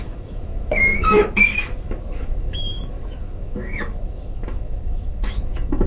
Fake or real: fake